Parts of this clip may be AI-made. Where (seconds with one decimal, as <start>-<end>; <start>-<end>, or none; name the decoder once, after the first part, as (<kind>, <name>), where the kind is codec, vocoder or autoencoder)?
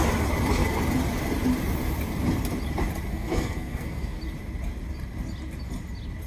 3.1-4.2 (codec, SNAC)